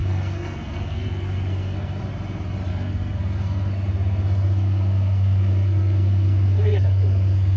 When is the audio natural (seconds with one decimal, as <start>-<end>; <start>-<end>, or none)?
2.0-2.7

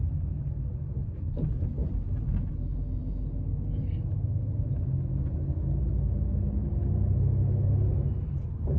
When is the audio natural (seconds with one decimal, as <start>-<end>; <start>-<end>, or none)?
0.0-8.8